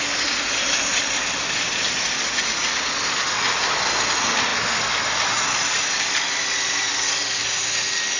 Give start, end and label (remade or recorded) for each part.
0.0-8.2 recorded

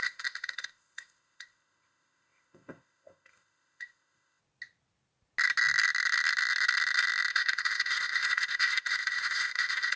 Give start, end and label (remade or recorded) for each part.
0.0-4.4 remade; 4.4-7.3 recorded; 7.3-10.0 remade

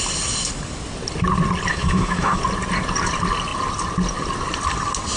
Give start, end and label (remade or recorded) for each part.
0.0-1.7 recorded; 1.7-2.4 remade; 2.4-5.2 recorded

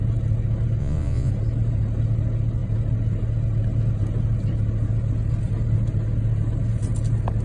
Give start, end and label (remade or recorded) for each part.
0.0-0.8 recorded; 0.8-1.3 remade; 1.3-7.4 recorded